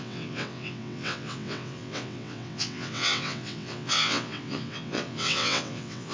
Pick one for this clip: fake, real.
fake